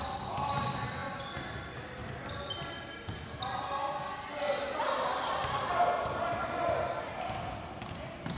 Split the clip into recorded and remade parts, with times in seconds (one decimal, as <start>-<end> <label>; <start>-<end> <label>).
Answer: 0.0-8.4 recorded